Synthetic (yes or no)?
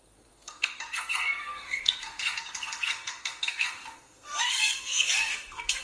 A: yes